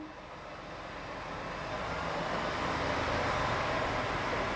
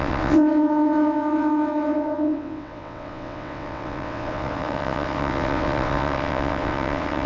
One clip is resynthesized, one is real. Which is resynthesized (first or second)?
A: second